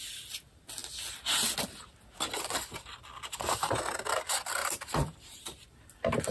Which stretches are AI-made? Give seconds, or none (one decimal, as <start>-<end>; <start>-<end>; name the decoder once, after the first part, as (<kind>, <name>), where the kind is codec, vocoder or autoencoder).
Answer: 4.6-5.8 (vocoder, BigVGAN v2)